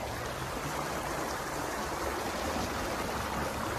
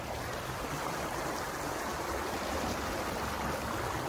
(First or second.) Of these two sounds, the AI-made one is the second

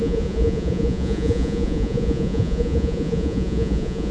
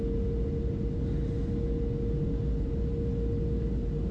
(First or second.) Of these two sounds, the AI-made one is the first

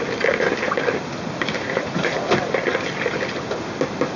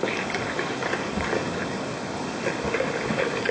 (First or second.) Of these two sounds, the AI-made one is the second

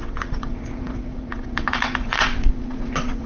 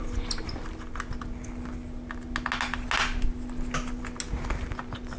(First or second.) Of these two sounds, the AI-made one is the first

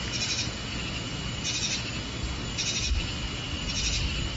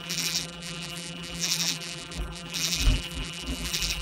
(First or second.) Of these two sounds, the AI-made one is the second